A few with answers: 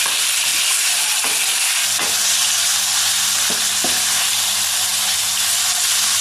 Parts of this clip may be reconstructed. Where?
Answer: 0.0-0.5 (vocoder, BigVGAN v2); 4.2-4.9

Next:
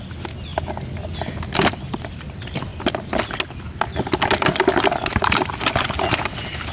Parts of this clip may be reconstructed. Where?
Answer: 5.0-5.5 (vocoder, BigVGAN v2)

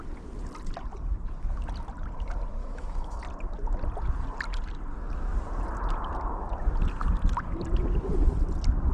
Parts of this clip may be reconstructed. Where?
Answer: 2.6-3.2 (autoencoder, DAC-VAE)

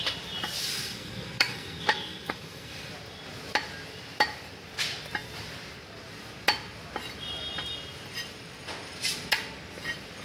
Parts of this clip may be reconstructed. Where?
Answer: 0.6-2.9 (codec, SNAC)